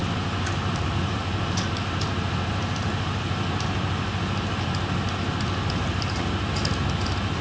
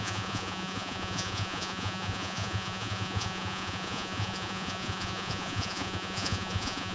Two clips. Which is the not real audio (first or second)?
second